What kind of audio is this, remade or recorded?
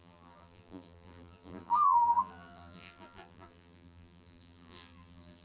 remade